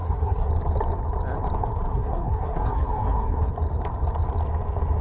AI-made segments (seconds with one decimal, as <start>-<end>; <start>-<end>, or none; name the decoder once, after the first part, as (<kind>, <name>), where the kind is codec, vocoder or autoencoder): 0.0-0.5 (codec, SNAC); 1.9-3.5